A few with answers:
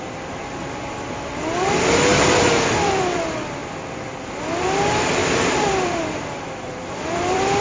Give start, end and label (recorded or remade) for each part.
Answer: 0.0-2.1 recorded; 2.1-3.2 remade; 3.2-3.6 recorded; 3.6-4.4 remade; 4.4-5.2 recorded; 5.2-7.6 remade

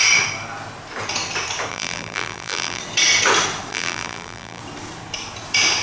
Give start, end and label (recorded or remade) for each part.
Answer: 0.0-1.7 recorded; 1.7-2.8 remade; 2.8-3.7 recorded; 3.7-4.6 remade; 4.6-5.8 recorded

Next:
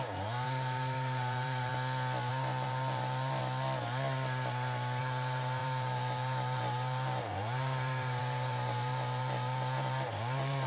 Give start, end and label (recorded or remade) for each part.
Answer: 0.0-1.7 remade; 1.7-2.3 recorded; 2.3-3.4 remade; 3.4-5.0 recorded; 5.0-10.7 remade

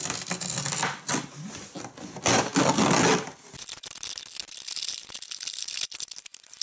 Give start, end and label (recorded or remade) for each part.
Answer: 0.0-6.6 recorded

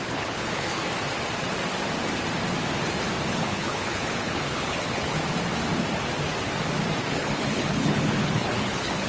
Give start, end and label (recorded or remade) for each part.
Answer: 0.0-0.8 remade; 0.8-3.3 recorded; 3.3-5.2 remade; 5.2-7.1 recorded; 7.1-9.1 remade

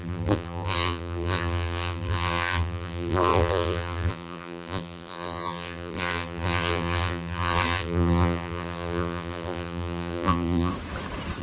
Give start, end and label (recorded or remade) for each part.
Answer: 0.0-10.7 remade; 10.7-11.4 recorded